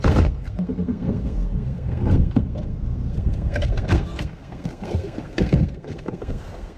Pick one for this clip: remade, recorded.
remade